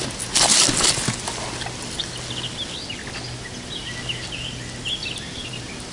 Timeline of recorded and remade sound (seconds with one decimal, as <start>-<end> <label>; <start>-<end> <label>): 0.0-5.9 recorded

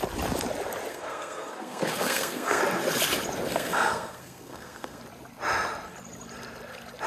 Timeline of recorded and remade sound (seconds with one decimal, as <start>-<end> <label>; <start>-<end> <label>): 0.0-0.9 recorded; 0.9-2.6 remade; 2.6-3.5 recorded; 3.5-5.0 remade; 5.0-7.1 recorded

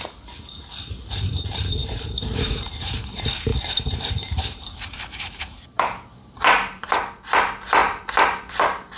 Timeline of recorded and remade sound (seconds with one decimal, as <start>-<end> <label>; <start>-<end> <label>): 0.0-1.8 recorded; 1.8-2.9 remade; 2.9-3.5 recorded; 3.5-6.9 remade; 6.9-9.0 recorded